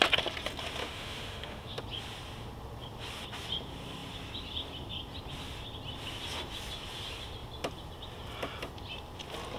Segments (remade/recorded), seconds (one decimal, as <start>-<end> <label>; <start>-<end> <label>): 0.0-0.8 recorded; 0.8-1.8 remade; 1.8-9.6 recorded

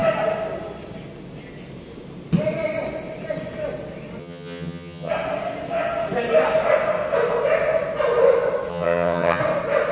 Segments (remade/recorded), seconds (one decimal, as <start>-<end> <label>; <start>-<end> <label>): 0.0-4.2 recorded; 4.2-5.1 remade; 5.1-8.7 recorded; 8.7-9.4 remade; 9.4-9.9 recorded

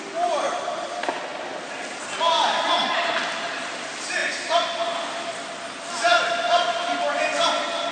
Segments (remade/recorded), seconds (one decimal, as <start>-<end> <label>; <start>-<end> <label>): 0.0-7.9 recorded